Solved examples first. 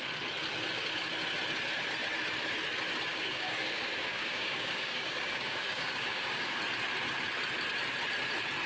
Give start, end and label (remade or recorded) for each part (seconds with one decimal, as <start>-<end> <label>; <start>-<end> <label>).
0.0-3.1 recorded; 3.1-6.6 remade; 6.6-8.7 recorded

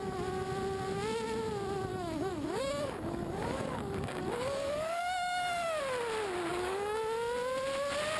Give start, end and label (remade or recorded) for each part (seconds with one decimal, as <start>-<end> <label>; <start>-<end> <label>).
0.0-1.9 recorded; 1.9-5.8 remade; 5.8-6.5 recorded; 6.5-7.0 remade; 7.0-8.2 recorded

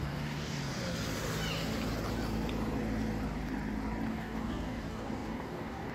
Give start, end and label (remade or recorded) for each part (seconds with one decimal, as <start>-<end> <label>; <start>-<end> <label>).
0.0-0.6 remade; 0.6-4.1 recorded; 4.1-5.9 remade

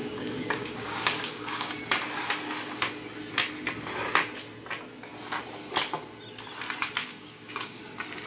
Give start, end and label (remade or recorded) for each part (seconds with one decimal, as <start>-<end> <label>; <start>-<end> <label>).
0.0-1.8 remade; 1.8-7.0 recorded; 7.0-7.8 remade; 7.8-8.3 recorded

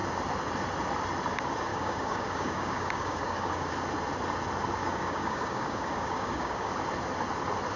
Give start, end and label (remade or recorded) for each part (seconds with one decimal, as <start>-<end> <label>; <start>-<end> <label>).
0.0-1.7 recorded; 1.7-3.7 remade; 3.7-4.8 recorded; 4.8-6.7 remade; 6.7-7.8 recorded